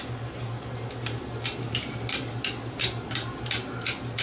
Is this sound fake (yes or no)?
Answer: no